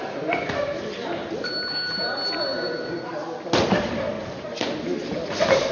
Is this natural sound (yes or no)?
yes